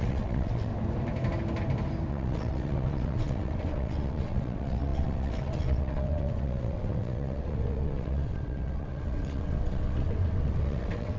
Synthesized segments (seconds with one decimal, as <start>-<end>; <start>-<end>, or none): 0.0-0.7; 2.1-11.2